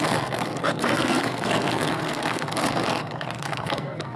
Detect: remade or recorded remade